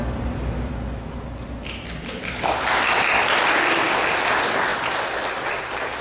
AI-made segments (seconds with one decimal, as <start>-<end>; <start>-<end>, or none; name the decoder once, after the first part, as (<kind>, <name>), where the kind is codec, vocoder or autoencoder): none